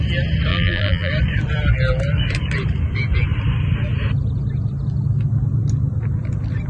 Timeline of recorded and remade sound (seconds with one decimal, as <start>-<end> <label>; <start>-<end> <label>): 0.0-0.5 recorded; 0.5-1.1 remade; 1.1-6.7 recorded